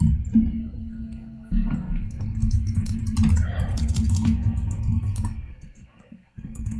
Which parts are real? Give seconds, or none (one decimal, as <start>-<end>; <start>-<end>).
0.0-0.8; 3.0-3.7